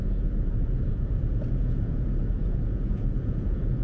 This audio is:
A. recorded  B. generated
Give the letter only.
B